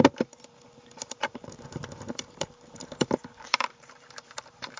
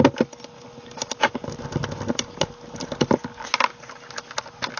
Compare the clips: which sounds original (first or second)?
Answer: second